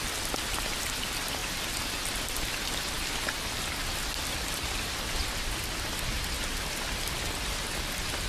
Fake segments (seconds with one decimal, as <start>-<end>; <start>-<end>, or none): 1.4-1.9